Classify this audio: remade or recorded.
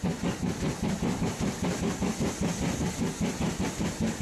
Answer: recorded